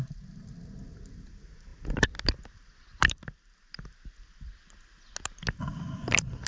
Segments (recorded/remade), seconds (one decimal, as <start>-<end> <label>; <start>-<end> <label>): 0.0-6.5 recorded